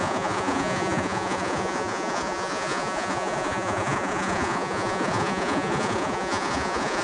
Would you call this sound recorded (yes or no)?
no